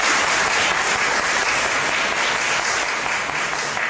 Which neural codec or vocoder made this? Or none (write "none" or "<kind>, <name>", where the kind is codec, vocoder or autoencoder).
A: none